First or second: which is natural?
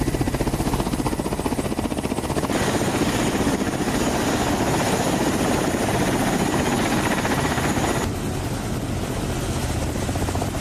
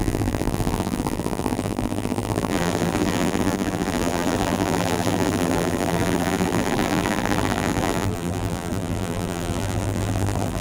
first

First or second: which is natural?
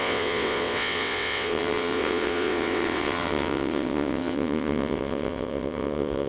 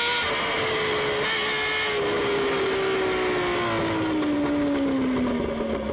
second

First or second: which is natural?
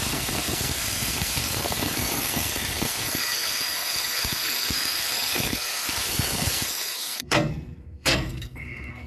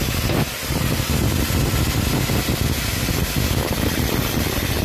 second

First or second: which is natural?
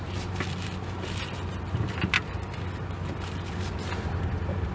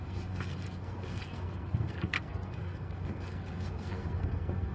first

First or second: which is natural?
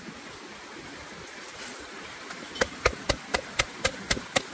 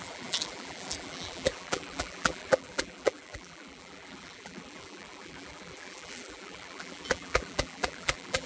first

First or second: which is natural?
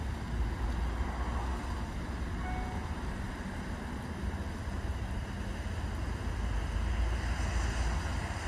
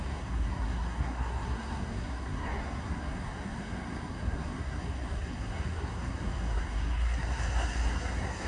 first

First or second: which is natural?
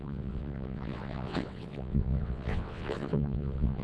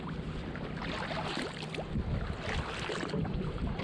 second